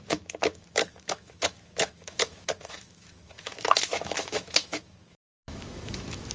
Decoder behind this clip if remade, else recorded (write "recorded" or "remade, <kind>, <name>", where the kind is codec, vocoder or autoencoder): remade, autoencoder, DAC-VAE